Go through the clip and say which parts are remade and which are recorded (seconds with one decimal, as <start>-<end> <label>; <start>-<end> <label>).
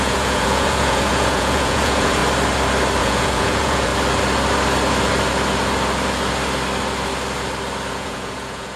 0.0-2.2 remade; 2.2-3.0 recorded; 3.0-3.9 remade; 3.9-7.9 recorded; 7.9-8.8 remade